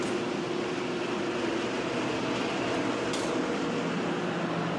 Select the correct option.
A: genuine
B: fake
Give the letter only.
A